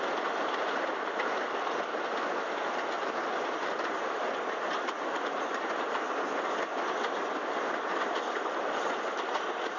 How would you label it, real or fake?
real